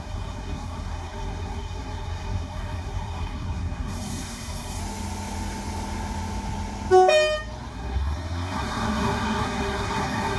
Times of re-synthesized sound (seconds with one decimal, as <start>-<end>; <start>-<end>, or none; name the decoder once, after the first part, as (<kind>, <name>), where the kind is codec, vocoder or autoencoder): 0.0-4.8 (codec, SNAC); 7.7-10.4